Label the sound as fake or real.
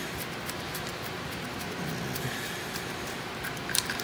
real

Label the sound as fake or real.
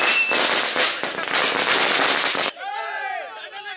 real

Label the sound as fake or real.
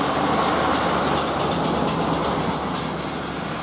real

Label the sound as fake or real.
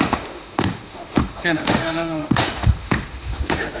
fake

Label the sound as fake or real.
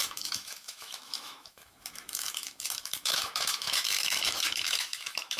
fake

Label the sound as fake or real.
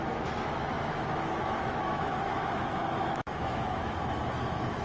fake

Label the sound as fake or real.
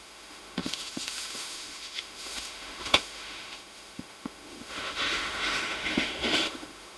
fake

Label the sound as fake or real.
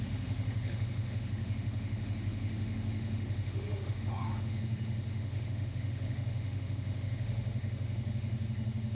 fake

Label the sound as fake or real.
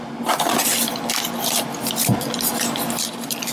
real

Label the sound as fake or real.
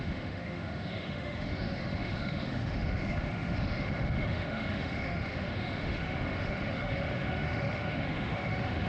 fake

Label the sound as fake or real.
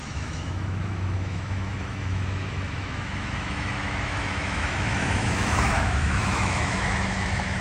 fake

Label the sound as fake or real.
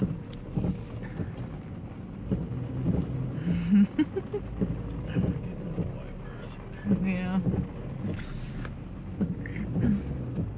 real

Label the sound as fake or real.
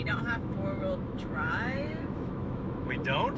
fake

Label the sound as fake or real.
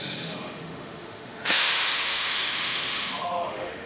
fake